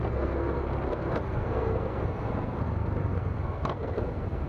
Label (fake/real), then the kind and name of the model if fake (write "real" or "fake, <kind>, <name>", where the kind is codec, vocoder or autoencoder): fake, codec, SNAC